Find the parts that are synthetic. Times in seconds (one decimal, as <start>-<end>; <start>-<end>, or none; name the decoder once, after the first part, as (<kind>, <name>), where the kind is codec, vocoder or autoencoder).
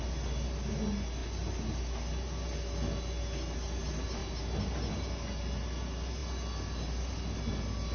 none